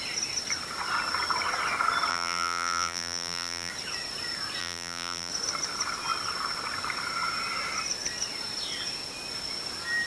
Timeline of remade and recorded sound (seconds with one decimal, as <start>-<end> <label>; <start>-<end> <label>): 0.0-2.1 recorded; 2.1-3.7 remade; 3.7-4.6 recorded; 4.6-5.3 remade; 5.3-10.1 recorded